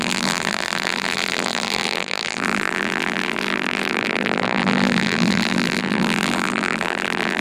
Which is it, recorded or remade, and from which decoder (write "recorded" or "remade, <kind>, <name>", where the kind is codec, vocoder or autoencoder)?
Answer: remade, vocoder, BigVGAN v2